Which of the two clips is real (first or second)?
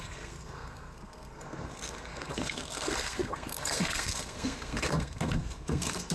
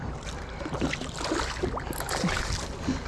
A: second